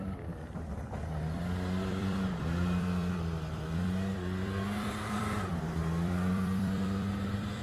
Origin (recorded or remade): remade